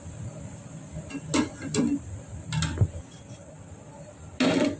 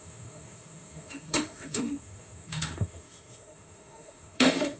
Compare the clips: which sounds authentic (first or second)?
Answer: first